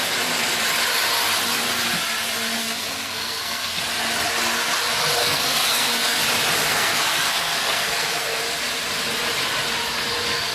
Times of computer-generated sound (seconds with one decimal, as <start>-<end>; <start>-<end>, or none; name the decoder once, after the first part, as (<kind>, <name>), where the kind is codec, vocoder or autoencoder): 2.6-3.8 (codec, SNAC); 5.2-6.2; 6.7-8.4